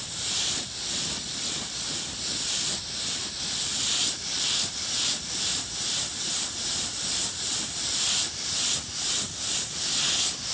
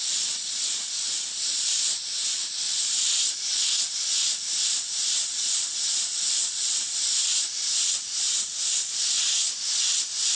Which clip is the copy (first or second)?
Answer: first